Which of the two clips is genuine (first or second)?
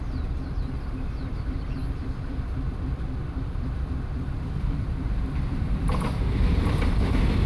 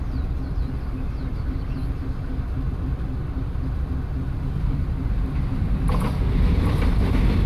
second